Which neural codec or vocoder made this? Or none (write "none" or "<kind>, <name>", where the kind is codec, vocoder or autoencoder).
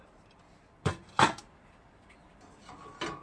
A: vocoder, BigVGAN v2